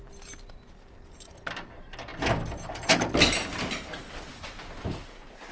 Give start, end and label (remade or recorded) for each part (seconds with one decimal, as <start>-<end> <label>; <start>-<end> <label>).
0.0-5.5 recorded